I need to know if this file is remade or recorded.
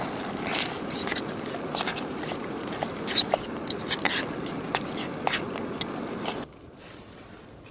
recorded